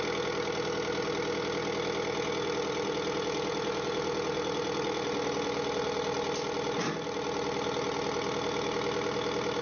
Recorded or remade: recorded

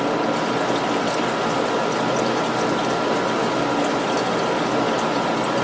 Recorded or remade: recorded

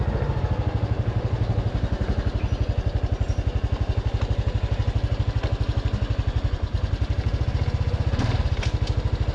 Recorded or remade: recorded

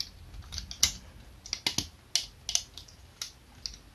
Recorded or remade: recorded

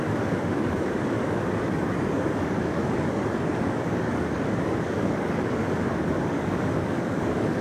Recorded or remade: remade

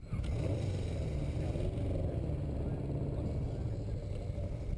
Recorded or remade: recorded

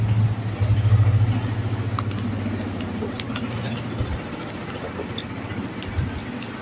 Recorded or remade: recorded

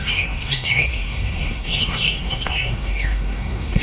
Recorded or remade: remade